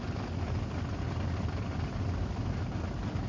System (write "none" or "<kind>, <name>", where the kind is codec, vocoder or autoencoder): none